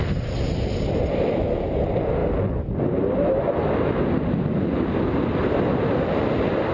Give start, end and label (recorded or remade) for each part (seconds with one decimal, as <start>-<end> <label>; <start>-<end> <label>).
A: 0.0-6.7 recorded